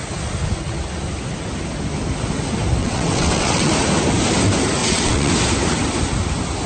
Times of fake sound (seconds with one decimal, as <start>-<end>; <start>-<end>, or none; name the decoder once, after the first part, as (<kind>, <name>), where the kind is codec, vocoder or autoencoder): 2.8-3.7 (vocoder, WaveNeXt); 4.8-5.3